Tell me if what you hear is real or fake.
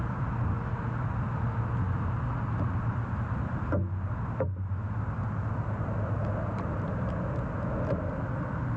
real